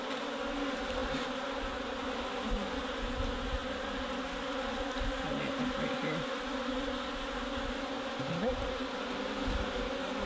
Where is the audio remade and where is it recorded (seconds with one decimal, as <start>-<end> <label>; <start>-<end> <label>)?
0.0-10.3 recorded